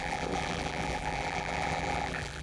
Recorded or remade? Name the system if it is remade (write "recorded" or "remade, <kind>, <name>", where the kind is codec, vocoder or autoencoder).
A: remade, vocoder, BigVGAN v2